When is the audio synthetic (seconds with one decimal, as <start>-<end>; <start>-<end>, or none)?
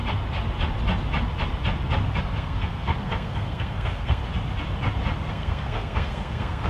2.2-4.2; 5.3-6.7